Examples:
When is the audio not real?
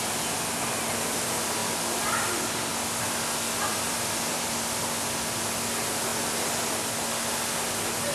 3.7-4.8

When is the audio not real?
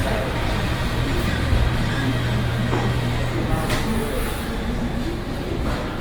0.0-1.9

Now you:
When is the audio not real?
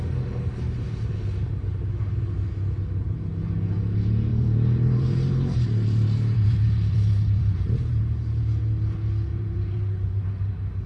4.3-8.0; 9.3-10.3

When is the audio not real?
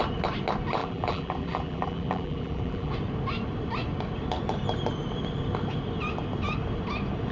0.8-2.9